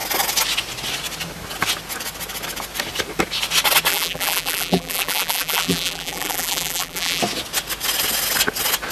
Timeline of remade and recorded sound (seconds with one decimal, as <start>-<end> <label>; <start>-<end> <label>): 0.0-3.9 recorded; 3.9-7.2 remade; 7.2-8.9 recorded